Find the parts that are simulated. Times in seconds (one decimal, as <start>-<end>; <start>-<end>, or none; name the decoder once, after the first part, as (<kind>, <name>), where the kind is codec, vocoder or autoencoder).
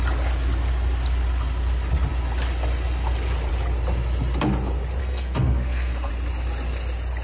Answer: 5.0-6.1 (codec, SNAC)